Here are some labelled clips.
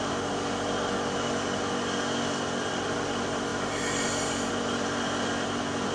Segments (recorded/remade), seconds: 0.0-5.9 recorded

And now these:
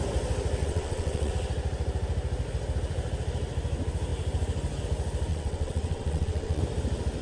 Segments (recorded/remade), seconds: 0.0-0.6 recorded; 0.6-1.3 remade; 1.3-5.3 recorded; 5.3-6.6 remade; 6.6-7.2 recorded

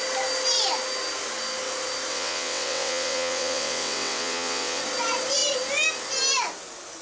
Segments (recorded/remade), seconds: 0.0-2.1 recorded; 2.1-4.8 remade; 4.8-7.0 recorded

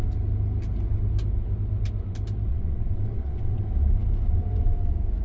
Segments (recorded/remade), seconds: 0.0-2.5 recorded; 2.5-3.6 remade; 3.6-5.2 recorded

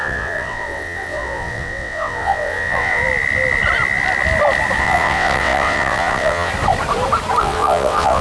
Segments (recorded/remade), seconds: 0.0-3.0 remade; 3.0-4.8 recorded; 4.8-6.5 remade; 6.5-7.4 recorded; 7.4-8.2 remade